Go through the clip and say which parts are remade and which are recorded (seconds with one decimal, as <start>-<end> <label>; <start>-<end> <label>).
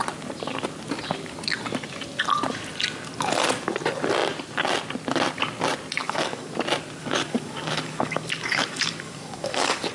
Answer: 0.0-6.0 recorded; 6.0-6.5 remade; 6.5-7.0 recorded; 7.0-9.9 remade